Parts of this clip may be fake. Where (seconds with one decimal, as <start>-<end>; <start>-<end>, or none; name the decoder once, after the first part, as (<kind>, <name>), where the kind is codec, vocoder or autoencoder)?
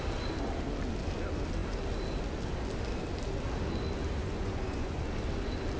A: 4.2-5.0 (vocoder, Vocos)